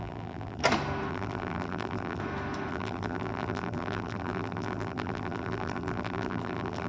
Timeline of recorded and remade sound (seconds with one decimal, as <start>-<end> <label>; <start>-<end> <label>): 0.0-0.6 remade; 0.6-1.1 recorded; 1.1-2.2 remade; 2.2-2.7 recorded; 2.7-6.9 remade